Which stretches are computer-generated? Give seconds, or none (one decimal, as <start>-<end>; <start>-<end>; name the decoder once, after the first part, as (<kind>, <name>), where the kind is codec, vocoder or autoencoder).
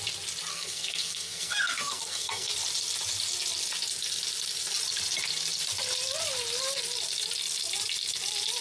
0.5-2.5 (codec, SNAC)